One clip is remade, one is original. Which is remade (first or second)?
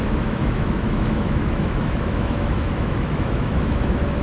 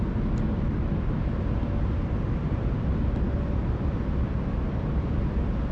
first